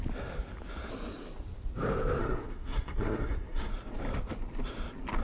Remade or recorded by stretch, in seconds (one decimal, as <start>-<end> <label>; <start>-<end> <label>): 0.0-2.2 recorded; 2.2-3.7 remade; 3.7-5.2 recorded